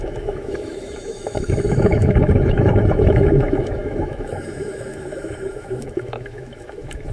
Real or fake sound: fake